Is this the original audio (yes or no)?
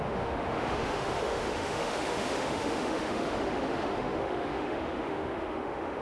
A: no